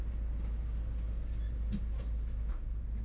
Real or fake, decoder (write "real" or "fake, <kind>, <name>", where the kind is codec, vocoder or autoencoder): real